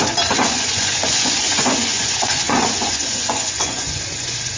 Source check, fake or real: fake